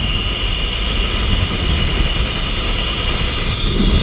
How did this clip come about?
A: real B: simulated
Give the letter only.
A